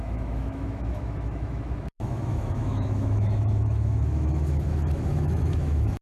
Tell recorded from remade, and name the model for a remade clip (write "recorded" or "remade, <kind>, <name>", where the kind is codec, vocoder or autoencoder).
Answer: remade, autoencoder, DAC-VAE